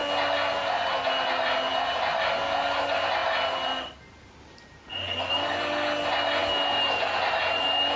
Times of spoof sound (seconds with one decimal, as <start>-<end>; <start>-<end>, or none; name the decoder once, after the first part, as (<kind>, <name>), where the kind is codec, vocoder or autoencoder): none